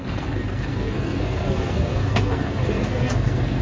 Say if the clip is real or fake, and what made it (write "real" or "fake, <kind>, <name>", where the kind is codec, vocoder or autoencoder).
fake, codec, SNAC